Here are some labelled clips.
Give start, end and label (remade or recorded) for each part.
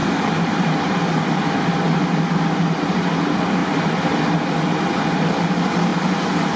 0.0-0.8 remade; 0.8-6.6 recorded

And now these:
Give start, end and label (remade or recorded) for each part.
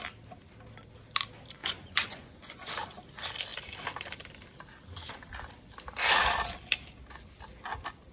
0.0-1.6 recorded; 1.6-2.7 remade; 2.7-8.1 recorded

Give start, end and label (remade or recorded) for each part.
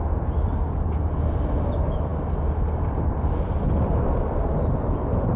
0.0-5.4 recorded